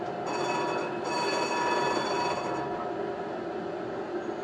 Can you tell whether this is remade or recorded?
recorded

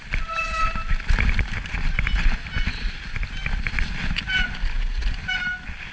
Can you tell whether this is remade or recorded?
recorded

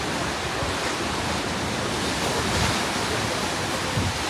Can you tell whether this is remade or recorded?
recorded